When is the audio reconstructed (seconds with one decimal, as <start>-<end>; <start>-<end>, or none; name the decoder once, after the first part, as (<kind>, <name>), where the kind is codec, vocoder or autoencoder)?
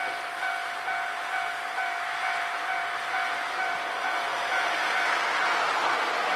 none